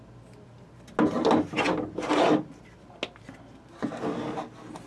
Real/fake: real